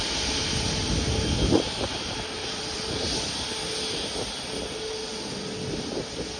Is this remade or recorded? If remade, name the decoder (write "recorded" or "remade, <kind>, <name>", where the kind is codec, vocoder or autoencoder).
recorded